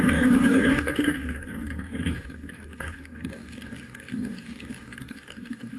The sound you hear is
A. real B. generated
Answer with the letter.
B